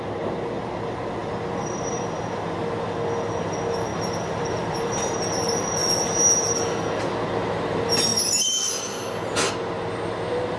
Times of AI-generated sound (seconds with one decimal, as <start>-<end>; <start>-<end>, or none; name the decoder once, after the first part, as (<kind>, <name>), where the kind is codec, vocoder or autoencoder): 1.2-2.7 (vocoder, BigVGAN v2); 3.9-5.3